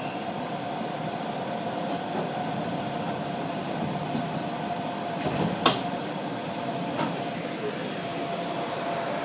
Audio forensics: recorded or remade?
remade